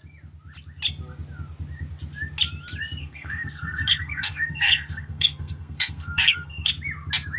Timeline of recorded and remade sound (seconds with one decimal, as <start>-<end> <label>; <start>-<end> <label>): 0.0-3.0 recorded; 3.0-6.7 remade; 6.7-7.4 recorded